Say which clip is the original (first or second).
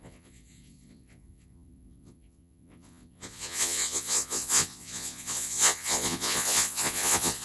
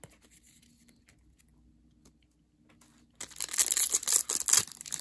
second